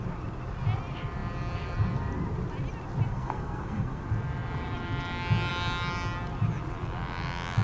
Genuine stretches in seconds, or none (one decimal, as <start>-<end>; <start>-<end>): 0.0-3.1; 4.0-7.6